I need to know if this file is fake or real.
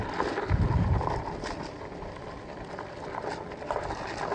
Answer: real